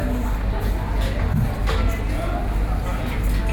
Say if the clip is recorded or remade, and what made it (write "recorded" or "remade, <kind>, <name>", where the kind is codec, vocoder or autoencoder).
recorded